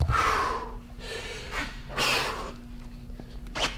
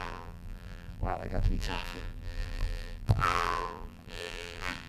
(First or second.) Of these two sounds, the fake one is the second